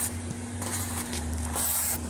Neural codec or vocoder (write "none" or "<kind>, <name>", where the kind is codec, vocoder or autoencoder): none